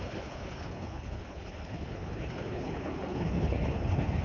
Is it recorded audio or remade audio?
remade